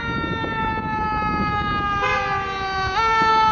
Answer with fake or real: real